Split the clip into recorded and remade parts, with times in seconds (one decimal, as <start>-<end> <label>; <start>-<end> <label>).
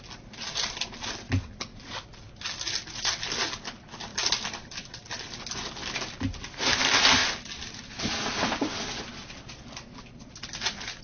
0.0-11.0 recorded